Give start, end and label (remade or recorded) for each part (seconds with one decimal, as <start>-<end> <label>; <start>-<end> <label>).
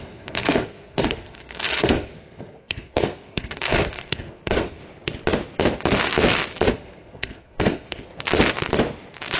0.0-4.8 remade; 4.8-6.7 recorded; 6.7-8.1 remade; 8.1-9.4 recorded